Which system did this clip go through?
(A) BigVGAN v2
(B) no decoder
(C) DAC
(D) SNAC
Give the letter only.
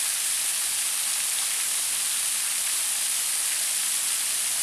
B